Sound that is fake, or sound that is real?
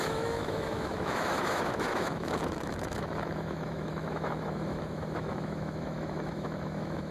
fake